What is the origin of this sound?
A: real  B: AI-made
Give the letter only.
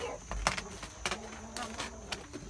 A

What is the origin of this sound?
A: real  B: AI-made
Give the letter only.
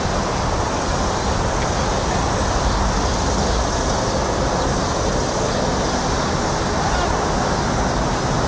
A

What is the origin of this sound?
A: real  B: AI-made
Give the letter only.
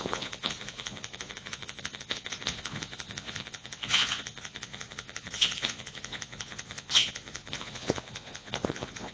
B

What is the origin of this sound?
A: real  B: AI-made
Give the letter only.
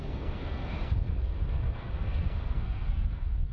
B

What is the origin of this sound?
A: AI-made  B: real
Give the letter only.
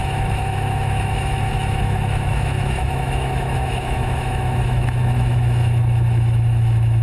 A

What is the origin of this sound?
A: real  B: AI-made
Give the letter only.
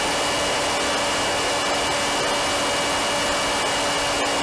A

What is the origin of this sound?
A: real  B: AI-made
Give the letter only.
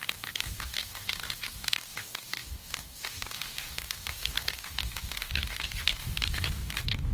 B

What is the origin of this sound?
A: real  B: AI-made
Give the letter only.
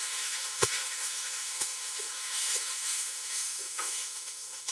B